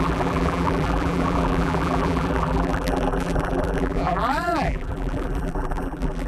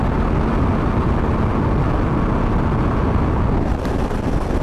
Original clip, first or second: second